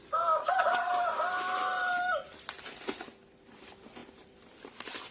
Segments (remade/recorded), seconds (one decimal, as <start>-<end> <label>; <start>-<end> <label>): 0.0-0.4 recorded; 0.4-0.9 remade; 0.9-5.1 recorded